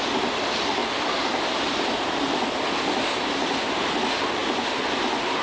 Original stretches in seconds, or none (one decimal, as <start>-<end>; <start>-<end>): 0.0-0.8; 4.0-5.4